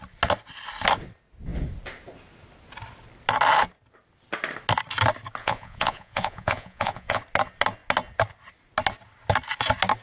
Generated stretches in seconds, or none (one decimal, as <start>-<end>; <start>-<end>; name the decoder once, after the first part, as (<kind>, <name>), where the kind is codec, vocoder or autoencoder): 5.4-7.2 (vocoder, Vocos)